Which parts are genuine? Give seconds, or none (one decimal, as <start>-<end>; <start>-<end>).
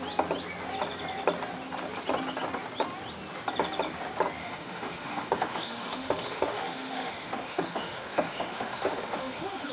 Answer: 0.0-4.4